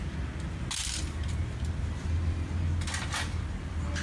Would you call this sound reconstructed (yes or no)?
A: no